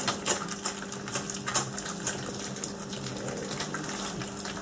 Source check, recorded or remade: recorded